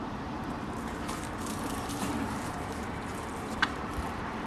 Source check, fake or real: fake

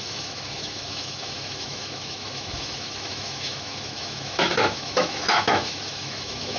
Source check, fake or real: fake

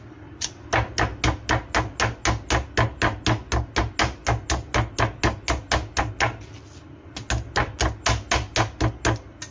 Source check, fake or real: real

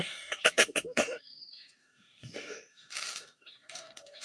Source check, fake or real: fake